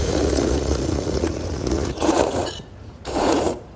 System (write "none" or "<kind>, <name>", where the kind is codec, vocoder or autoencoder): vocoder, Vocos